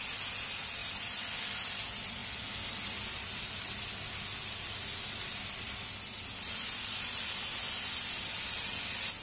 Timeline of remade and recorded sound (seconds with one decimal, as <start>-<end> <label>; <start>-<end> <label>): 0.0-9.2 recorded

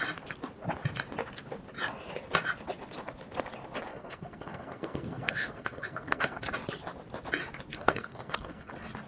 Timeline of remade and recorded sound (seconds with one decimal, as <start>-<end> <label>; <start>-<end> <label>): 0.0-3.9 recorded; 3.9-6.4 remade; 6.4-7.7 recorded; 7.7-8.7 remade; 8.7-9.1 recorded

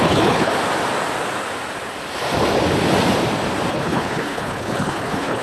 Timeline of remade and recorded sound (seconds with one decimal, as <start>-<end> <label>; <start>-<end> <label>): 0.0-0.5 remade; 0.5-3.7 recorded; 3.7-5.4 remade

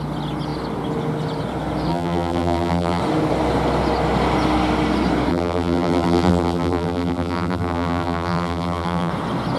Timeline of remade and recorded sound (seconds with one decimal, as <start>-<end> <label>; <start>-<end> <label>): 0.0-1.9 recorded; 1.9-3.0 remade; 3.0-5.3 recorded; 5.3-9.1 remade; 9.1-9.6 recorded

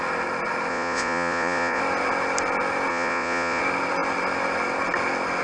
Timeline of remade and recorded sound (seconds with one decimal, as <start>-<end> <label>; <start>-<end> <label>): 0.0-0.7 recorded; 0.7-1.8 remade; 1.8-2.9 recorded; 2.9-3.6 remade; 3.6-5.4 recorded

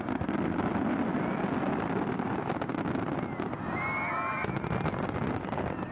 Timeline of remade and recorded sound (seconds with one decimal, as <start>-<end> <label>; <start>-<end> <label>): 0.0-5.9 recorded

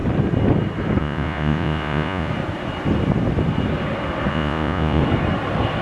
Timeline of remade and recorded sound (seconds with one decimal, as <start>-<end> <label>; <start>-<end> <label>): 0.0-1.0 recorded; 1.0-2.3 remade; 2.3-4.3 recorded; 4.3-5.0 remade; 5.0-5.8 recorded

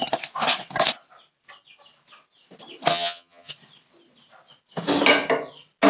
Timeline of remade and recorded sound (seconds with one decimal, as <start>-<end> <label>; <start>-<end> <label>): 0.0-2.9 recorded; 2.9-3.5 remade; 3.5-5.9 recorded